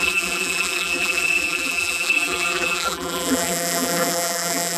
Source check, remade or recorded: remade